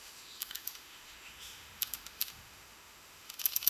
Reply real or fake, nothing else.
fake